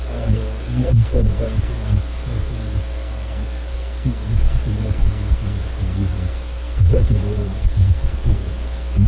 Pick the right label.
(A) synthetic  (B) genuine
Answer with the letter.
A